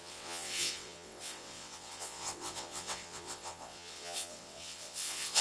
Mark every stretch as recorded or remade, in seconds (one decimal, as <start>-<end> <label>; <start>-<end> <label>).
0.0-5.4 remade